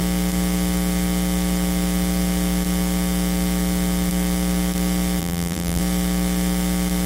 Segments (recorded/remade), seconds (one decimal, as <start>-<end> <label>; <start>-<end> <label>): 0.0-5.2 recorded; 5.2-5.8 remade; 5.8-7.1 recorded

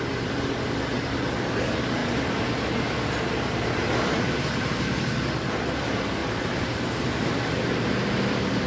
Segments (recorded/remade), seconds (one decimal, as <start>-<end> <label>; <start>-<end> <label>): 0.0-6.2 recorded; 6.2-8.7 remade

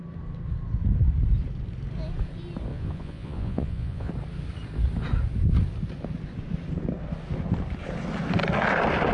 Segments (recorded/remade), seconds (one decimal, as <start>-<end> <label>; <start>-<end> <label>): 0.0-2.7 recorded; 2.7-4.1 remade; 4.1-9.1 recorded

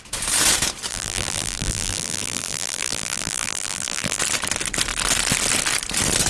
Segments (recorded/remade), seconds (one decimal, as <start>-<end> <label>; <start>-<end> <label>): 0.0-0.9 recorded; 0.9-4.2 remade; 4.2-6.3 recorded

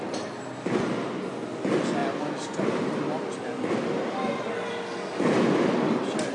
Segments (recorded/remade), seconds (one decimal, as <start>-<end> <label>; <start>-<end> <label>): 0.0-6.3 recorded

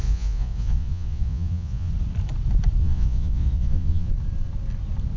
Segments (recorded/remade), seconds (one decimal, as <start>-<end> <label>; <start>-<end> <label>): 0.0-1.9 remade; 1.9-2.8 recorded; 2.8-4.1 remade; 4.1-5.2 recorded

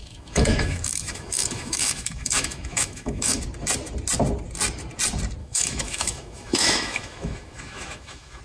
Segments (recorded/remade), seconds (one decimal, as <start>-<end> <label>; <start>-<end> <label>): 0.0-3.4 remade; 3.4-5.4 recorded; 5.4-8.4 remade